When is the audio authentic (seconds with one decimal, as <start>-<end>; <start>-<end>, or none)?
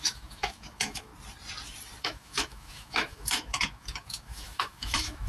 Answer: 1.1-2.0